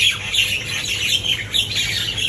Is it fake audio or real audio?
real